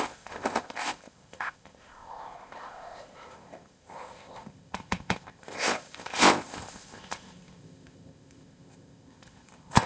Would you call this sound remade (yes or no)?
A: yes